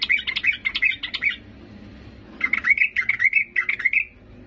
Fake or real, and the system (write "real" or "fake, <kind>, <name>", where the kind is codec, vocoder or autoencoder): real